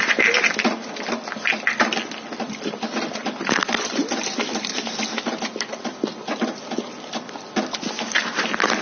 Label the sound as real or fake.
real